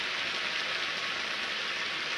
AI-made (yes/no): no